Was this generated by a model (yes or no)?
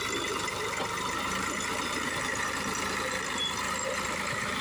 yes